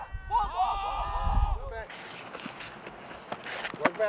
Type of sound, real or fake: real